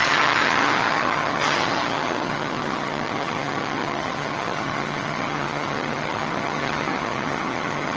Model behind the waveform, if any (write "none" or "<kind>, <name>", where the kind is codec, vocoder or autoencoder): vocoder, HiFi-GAN